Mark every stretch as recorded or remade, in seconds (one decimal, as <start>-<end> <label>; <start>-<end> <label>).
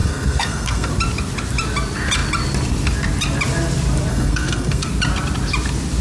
0.0-0.9 remade; 0.9-4.1 recorded; 4.1-4.9 remade; 4.9-6.0 recorded